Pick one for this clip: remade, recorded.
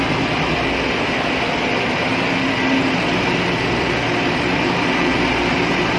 recorded